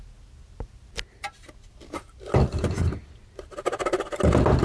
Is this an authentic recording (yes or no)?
yes